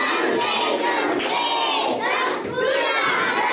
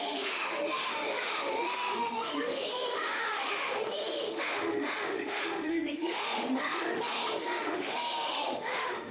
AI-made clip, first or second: second